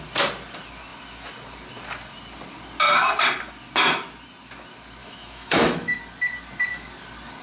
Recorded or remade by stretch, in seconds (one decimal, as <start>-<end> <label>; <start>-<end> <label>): 0.0-5.0 recorded; 5.0-6.0 remade; 6.0-7.4 recorded